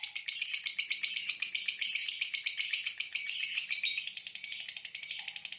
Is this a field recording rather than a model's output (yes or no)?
yes